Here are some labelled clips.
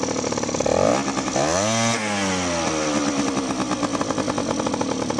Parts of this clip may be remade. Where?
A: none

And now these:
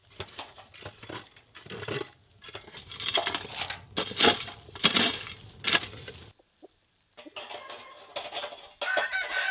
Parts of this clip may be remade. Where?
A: none

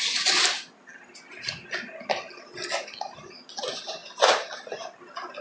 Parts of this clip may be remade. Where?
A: none

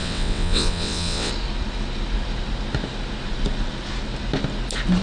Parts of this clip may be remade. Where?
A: 0.0-1.3 (vocoder, WaveNeXt)

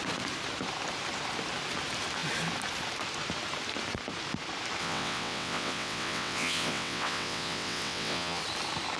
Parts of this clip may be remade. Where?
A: 4.8-8.4 (vocoder, WaveNeXt)